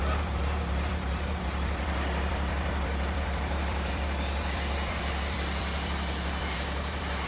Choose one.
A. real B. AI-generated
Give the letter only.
B